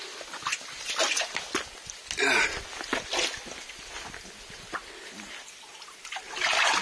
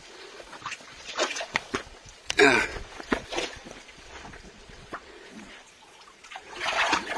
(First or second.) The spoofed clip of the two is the second